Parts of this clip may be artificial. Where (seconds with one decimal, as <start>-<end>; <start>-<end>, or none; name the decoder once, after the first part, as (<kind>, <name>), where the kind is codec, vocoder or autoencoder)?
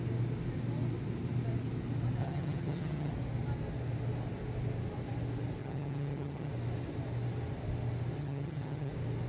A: 2.2-3.1 (vocoder, HiFi-GAN); 5.6-6.5; 8.2-8.9